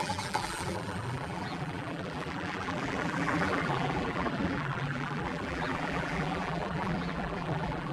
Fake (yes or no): yes